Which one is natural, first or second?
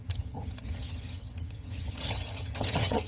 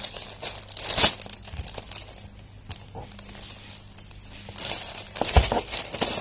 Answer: second